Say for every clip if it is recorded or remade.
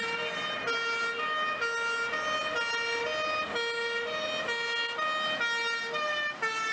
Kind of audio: recorded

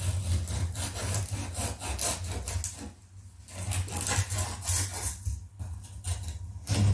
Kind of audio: recorded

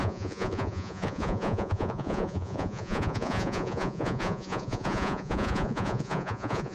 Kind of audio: remade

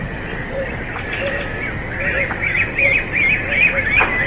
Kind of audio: recorded